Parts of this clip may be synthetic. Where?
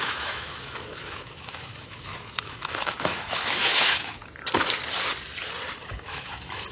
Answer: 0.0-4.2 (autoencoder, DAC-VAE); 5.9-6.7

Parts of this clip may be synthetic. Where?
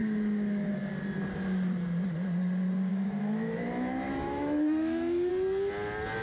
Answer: 0.0-0.8 (autoencoder, DAC-VAE); 2.9-5.3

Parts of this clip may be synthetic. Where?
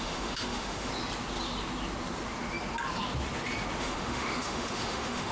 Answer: 0.0-0.9 (autoencoder, DAC-VAE); 3.8-5.3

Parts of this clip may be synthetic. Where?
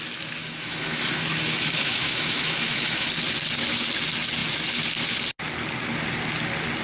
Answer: 0.4-3.1 (autoencoder, DAC-VAE)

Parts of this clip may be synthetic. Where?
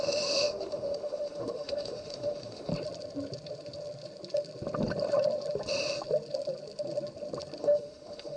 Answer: 0.0-2.7 (autoencoder, DAC-VAE); 7.6-8.4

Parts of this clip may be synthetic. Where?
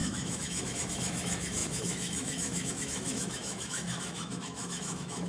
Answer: 0.0-5.3 (autoencoder, DAC-VAE)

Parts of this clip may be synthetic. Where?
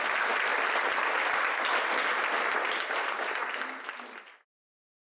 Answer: none